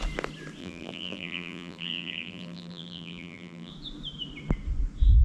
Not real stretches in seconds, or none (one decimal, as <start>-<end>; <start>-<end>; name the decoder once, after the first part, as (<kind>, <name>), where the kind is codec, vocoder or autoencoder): 0.6-3.7 (vocoder, BigVGAN v2)